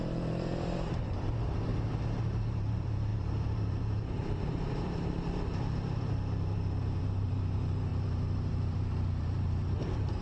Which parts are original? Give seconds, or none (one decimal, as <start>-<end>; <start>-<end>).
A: 1.7-2.2